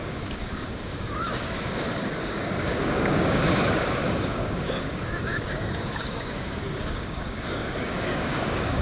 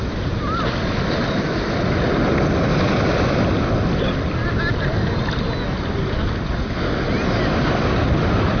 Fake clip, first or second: first